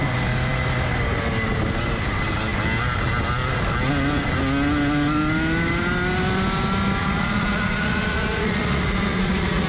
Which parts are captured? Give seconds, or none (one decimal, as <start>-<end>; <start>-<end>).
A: 0.0-7.0

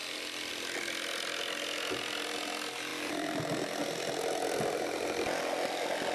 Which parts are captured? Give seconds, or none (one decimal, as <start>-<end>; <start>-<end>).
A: 0.5-2.9; 3.8-6.1

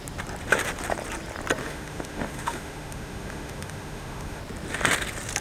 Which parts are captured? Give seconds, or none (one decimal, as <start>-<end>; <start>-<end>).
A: 0.0-1.6; 4.4-5.4

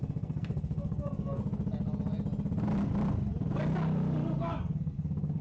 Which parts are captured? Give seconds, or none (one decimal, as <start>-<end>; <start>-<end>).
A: 1.4-4.6

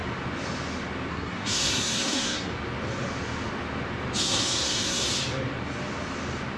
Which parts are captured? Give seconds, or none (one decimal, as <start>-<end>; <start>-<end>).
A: 0.0-1.1; 2.5-4.2; 5.1-6.6

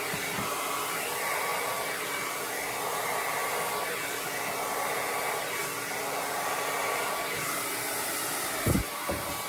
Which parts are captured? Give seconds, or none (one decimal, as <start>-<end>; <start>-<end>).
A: 0.0-9.5